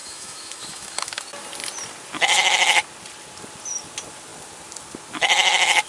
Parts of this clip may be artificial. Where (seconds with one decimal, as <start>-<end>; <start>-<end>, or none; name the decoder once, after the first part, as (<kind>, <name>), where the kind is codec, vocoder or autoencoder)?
0.0-1.2 (autoencoder, DAC-VAE)